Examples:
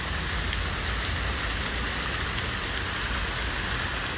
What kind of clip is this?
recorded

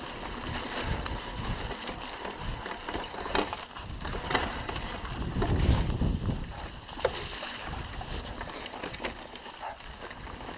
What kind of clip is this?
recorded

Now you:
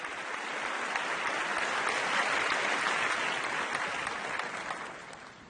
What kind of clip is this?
recorded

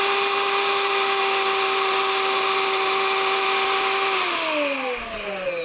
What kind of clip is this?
recorded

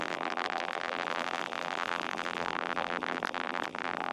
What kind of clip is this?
remade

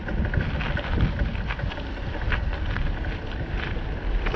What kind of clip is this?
recorded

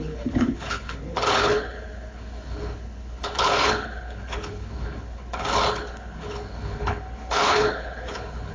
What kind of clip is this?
remade